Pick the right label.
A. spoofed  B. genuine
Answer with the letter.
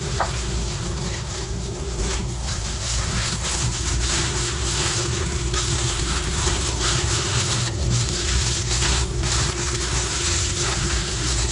A